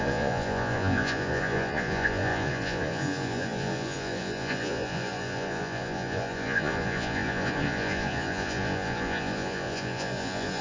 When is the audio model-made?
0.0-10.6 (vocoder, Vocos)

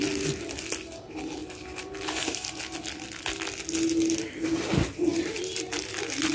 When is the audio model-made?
5.1-6.3 (vocoder, BigVGAN v2)

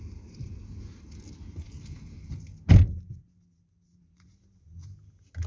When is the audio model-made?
none

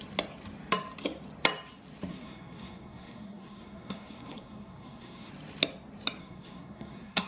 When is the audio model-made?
2.1-5.3 (codec, SNAC); 6.2-7.3

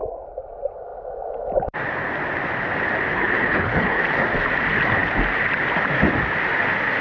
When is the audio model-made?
3.1-4.0 (codec, HILCodec)

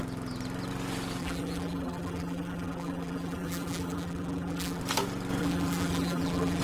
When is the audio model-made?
1.2-4.8 (vocoder, BigVGAN v2); 5.4-6.6